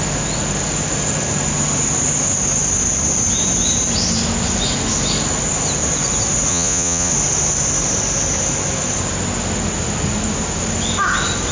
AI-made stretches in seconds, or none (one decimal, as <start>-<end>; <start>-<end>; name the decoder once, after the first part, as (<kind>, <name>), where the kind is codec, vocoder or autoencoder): 6.5-7.1 (vocoder, Vocos)